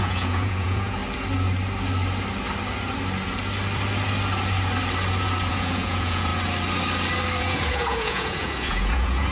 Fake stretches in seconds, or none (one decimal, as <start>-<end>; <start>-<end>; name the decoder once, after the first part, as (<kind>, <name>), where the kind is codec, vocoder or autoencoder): 0.0-1.0 (vocoder, Vocos); 5.5-6.3; 7.4-9.3